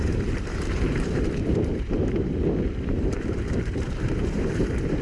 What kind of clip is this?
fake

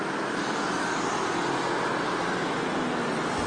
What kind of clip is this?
real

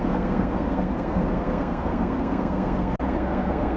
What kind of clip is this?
fake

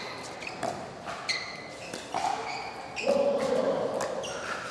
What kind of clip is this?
real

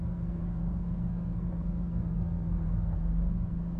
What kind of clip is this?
fake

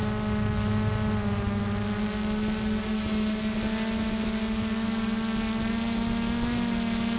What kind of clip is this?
real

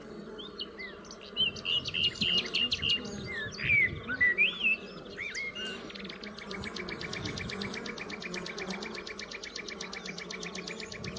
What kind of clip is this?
real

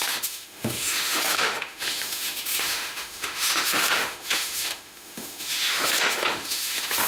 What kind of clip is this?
fake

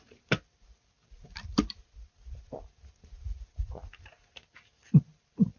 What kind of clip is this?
real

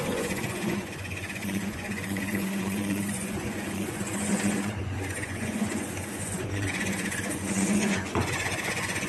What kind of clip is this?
fake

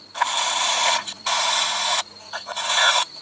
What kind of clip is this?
fake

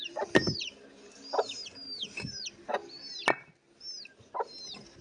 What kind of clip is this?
real